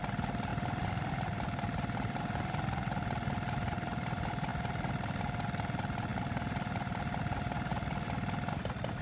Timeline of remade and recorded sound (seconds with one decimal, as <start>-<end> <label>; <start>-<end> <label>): 0.0-0.5 recorded; 0.5-1.1 remade; 1.1-7.7 recorded; 7.7-8.5 remade; 8.5-9.0 recorded